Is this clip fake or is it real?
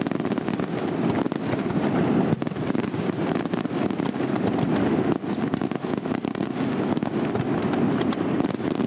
real